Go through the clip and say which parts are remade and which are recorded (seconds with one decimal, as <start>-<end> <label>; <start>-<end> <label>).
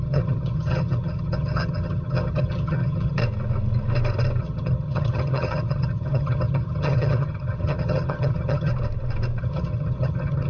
0.0-3.2 remade; 3.2-4.4 recorded; 4.4-8.7 remade; 8.7-9.4 recorded; 9.4-10.5 remade